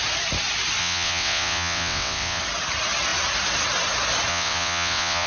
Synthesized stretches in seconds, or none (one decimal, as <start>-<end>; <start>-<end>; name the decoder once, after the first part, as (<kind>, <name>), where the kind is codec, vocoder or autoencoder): 0.8-2.4 (vocoder, WaveNeXt); 4.3-5.3